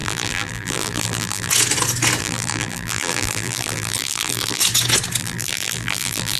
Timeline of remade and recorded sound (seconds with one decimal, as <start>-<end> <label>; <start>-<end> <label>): 0.0-1.5 remade; 1.5-2.2 recorded; 2.2-4.6 remade; 4.6-5.2 recorded; 5.2-6.4 remade